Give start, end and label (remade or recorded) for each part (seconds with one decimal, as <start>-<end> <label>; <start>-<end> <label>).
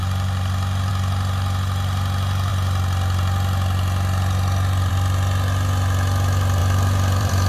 0.0-0.9 remade; 0.9-6.6 recorded; 6.6-7.5 remade